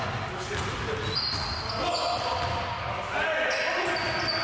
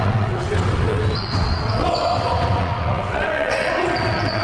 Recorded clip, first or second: first